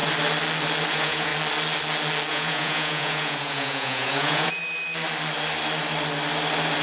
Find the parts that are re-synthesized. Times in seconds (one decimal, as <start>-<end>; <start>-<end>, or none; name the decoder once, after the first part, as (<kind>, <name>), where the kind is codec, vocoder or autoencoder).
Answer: 0.9-1.3 (vocoder, Vocos); 2.3-4.6